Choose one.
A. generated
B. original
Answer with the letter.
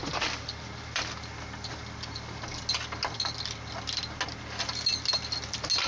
B